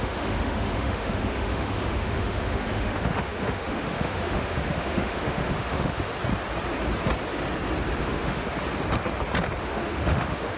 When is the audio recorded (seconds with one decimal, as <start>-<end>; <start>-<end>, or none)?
6.1-8.0; 8.4-9.6